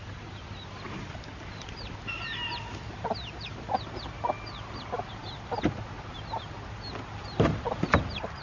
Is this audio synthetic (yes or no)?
no